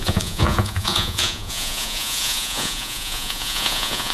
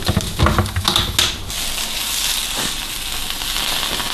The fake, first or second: first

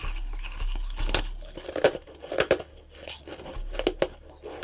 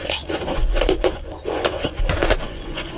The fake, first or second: second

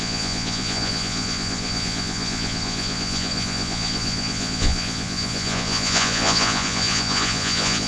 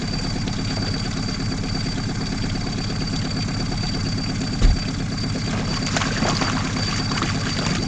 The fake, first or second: first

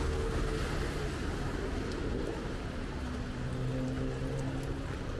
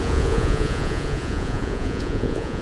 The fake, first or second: second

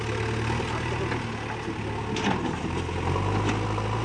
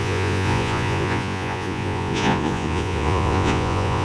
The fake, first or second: second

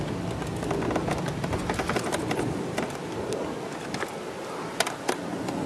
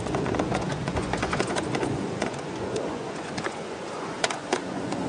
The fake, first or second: second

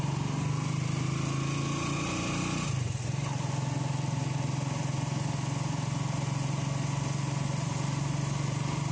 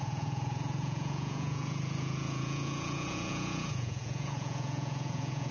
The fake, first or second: second